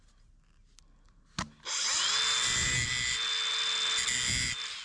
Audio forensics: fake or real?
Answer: real